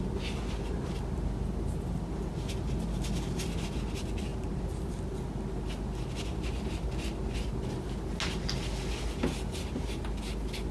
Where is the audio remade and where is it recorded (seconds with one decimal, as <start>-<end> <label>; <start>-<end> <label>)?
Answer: 0.0-4.3 recorded; 4.3-4.9 remade; 4.9-10.7 recorded

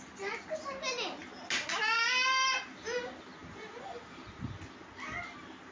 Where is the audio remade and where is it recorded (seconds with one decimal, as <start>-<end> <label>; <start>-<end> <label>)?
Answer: 0.0-3.4 recorded; 3.4-4.4 remade; 4.4-5.7 recorded

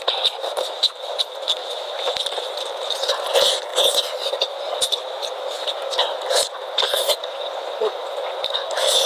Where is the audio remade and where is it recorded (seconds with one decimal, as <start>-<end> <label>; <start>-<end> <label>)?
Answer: 0.0-1.6 recorded; 1.6-2.9 remade; 2.9-9.1 recorded

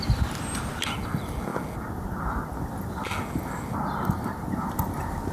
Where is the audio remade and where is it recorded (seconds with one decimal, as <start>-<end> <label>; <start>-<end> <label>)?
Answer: 0.0-5.3 recorded

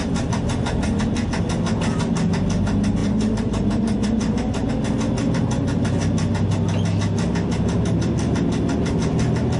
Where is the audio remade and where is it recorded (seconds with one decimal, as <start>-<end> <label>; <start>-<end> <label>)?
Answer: 0.0-3.0 recorded; 3.0-4.7 remade; 4.7-9.6 recorded

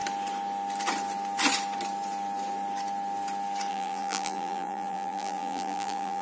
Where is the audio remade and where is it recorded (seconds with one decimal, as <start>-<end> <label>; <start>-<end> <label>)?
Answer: 0.0-3.7 recorded; 3.7-6.2 remade

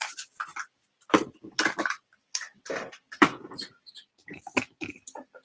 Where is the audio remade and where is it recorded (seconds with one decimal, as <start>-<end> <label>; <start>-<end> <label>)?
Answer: 0.0-0.5 recorded; 0.5-3.7 remade; 3.7-5.4 recorded